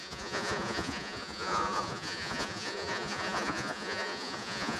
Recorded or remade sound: remade